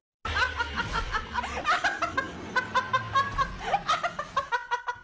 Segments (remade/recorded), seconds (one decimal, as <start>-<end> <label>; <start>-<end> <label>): 0.0-5.0 recorded